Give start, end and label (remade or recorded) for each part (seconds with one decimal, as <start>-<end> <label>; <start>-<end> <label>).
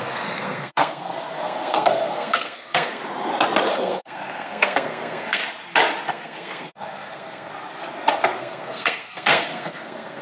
0.0-3.0 remade; 3.0-3.7 recorded; 3.7-5.4 remade; 5.4-6.1 recorded; 6.1-7.5 remade; 7.5-8.4 recorded; 8.4-10.2 remade